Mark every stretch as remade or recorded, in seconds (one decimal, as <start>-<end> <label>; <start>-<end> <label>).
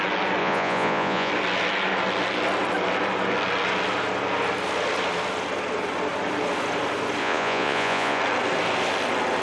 0.0-0.4 recorded; 0.4-1.3 remade; 1.3-7.2 recorded; 7.2-8.2 remade; 8.2-9.4 recorded